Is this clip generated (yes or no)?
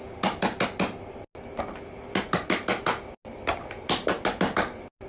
no